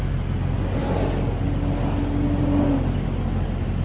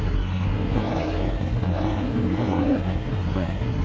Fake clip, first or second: second